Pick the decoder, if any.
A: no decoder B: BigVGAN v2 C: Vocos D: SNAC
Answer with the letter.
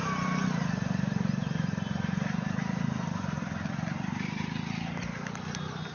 A